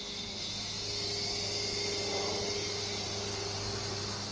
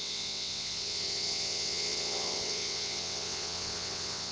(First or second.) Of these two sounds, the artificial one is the second